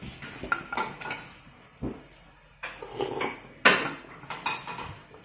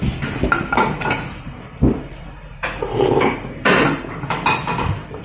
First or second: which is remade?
second